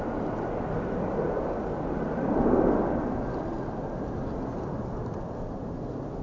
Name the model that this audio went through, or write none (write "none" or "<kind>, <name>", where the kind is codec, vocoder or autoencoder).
none